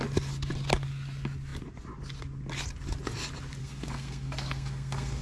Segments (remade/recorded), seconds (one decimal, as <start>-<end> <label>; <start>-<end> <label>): 0.0-3.6 recorded; 3.6-5.2 remade